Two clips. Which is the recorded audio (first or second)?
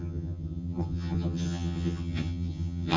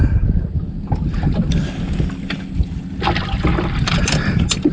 second